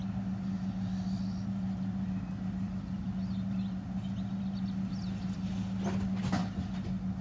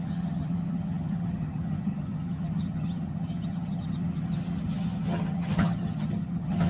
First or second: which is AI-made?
second